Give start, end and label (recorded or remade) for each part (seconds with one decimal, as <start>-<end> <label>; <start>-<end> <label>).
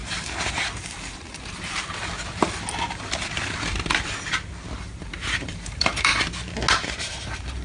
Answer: 0.0-0.8 recorded; 0.8-2.0 remade; 2.0-4.8 recorded; 4.8-6.1 remade; 6.1-7.0 recorded; 7.0-7.6 remade